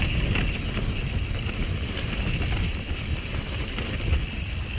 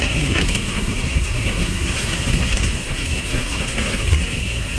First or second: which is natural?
first